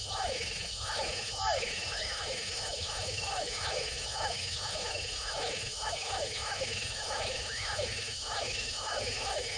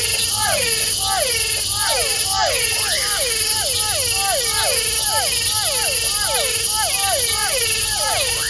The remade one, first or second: first